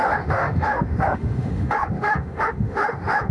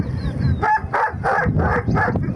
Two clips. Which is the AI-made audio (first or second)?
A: first